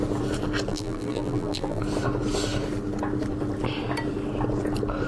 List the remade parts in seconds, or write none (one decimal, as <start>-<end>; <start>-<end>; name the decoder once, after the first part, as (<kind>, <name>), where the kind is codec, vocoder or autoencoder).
0.7-1.8 (vocoder, BigVGAN v2)